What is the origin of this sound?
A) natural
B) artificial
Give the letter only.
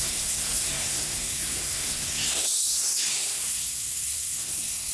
B